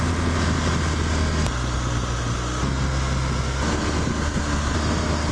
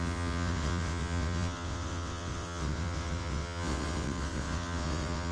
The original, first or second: first